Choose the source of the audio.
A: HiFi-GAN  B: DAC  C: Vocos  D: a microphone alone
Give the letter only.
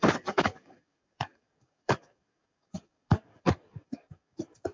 B